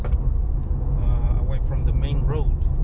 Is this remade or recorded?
recorded